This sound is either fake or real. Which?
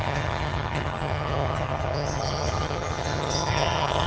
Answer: fake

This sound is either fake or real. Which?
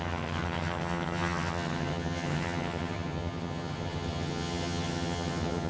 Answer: fake